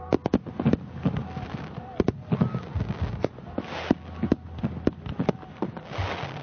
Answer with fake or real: real